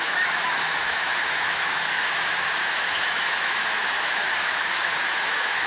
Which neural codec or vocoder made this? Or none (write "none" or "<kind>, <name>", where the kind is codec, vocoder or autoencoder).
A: autoencoder, DAC-VAE